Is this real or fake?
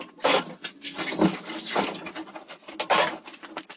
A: real